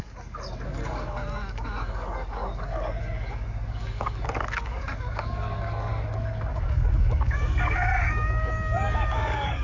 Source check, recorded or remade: remade